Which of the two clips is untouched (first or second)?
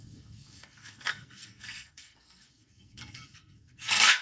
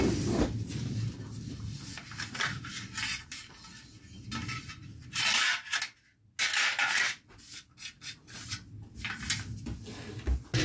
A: second